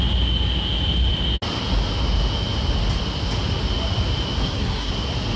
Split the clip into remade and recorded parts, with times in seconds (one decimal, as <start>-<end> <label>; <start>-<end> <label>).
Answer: 0.0-4.4 recorded; 4.4-4.9 remade; 4.9-5.4 recorded